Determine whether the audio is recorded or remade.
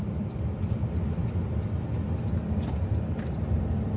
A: recorded